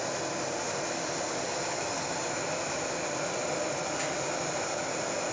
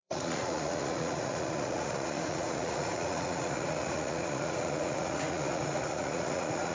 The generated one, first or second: second